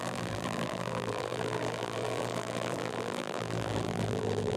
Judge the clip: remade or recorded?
remade